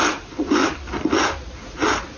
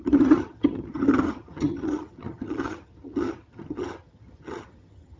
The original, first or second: first